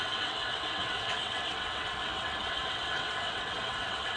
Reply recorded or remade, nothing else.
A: remade